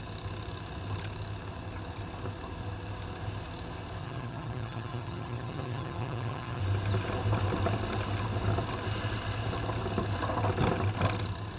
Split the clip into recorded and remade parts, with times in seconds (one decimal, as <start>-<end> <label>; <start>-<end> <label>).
0.0-4.0 recorded; 4.0-6.6 remade; 6.6-11.6 recorded